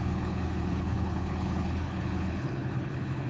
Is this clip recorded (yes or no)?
no